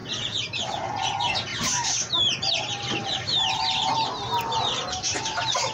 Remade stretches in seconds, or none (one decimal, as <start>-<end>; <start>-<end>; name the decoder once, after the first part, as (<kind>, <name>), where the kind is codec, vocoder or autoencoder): 0.0-1.0 (vocoder, BigVGAN v2); 1.5-3.7